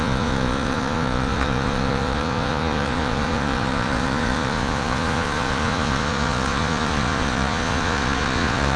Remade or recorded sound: remade